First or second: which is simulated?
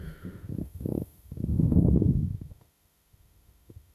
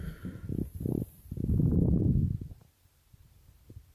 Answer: first